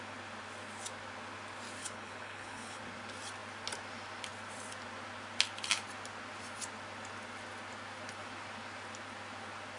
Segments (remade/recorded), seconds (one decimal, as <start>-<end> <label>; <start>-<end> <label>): 0.0-1.8 recorded; 1.8-2.8 remade; 2.8-9.8 recorded